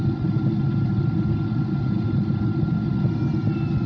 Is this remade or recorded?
recorded